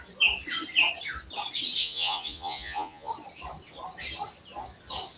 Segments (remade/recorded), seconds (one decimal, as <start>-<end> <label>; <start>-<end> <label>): 0.0-1.8 recorded; 1.8-3.1 remade; 3.1-5.2 recorded